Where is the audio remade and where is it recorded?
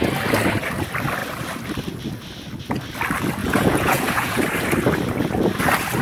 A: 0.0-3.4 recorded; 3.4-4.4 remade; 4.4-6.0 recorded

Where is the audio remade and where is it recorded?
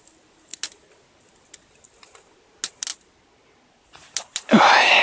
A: 0.0-5.0 recorded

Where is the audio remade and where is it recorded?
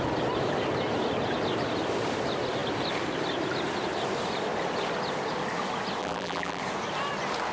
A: 0.0-6.0 recorded; 6.0-6.6 remade; 6.6-7.5 recorded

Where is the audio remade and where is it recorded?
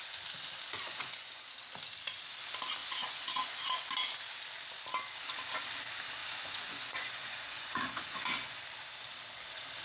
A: 0.0-0.9 recorded; 0.9-1.5 remade; 1.5-2.8 recorded; 2.8-3.6 remade; 3.6-6.2 recorded; 6.2-8.6 remade; 8.6-9.8 recorded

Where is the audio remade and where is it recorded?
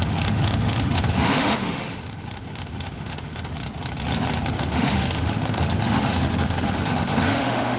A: 0.0-3.5 remade; 3.5-4.5 recorded; 4.5-7.8 remade